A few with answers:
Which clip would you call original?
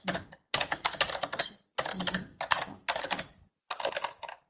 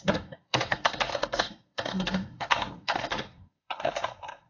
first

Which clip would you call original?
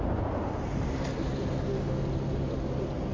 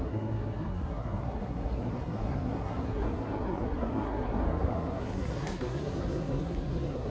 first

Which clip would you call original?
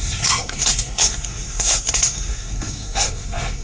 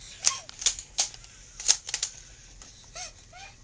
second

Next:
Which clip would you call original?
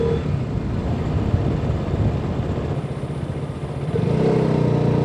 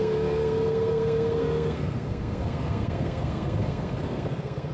first